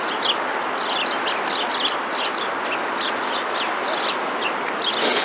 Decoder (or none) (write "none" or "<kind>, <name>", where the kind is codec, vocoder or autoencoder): none